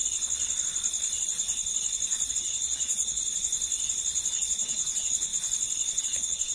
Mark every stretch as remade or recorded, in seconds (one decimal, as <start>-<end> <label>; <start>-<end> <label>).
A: 0.0-2.3 recorded; 2.3-3.2 remade; 3.2-4.3 recorded; 4.3-5.3 remade; 5.3-6.0 recorded; 6.0-6.5 remade